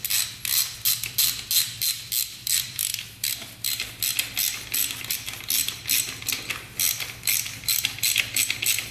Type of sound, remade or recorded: recorded